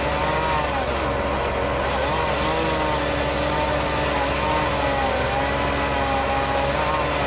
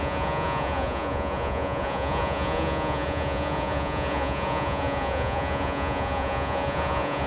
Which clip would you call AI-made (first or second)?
second